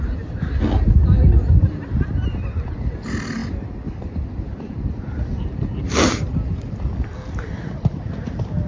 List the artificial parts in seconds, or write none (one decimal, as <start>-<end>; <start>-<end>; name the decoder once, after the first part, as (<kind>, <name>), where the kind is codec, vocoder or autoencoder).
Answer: none